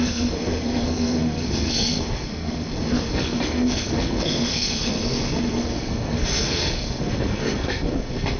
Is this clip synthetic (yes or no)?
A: yes